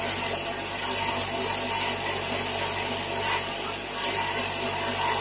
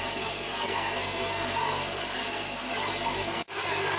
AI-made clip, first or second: second